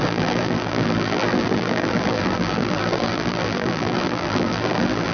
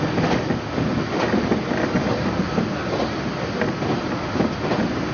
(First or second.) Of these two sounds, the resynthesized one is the first